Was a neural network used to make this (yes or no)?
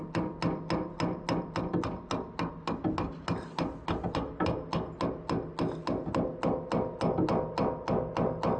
no